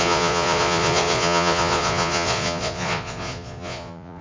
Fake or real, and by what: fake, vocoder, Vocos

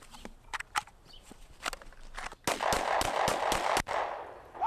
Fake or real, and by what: real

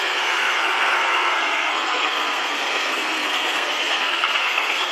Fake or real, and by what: fake, codec, SNAC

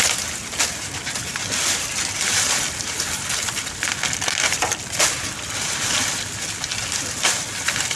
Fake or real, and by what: real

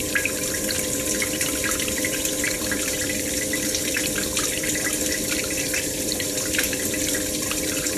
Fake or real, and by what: fake, vocoder, BigVGAN v2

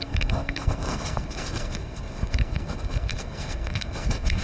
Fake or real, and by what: fake, codec, SNAC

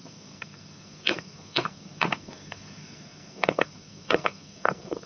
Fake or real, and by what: fake, codec, SNAC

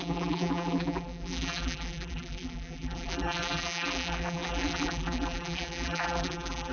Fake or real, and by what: fake, vocoder, BigVGAN v2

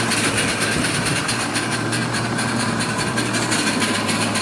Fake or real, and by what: fake, vocoder, BigVGAN v2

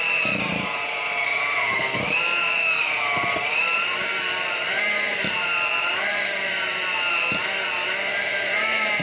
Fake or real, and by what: fake, vocoder, BigVGAN v2